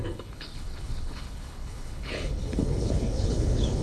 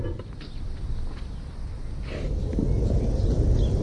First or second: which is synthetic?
first